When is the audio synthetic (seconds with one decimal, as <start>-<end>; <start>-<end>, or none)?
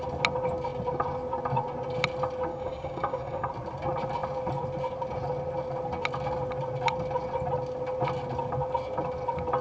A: 2.5-3.5